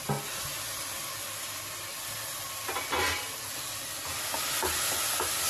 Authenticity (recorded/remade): recorded